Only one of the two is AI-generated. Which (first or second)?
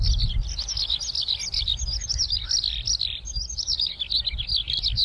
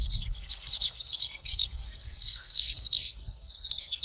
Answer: second